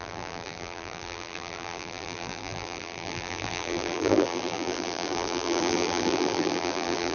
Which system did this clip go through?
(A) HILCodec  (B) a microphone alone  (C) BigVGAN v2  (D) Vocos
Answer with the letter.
C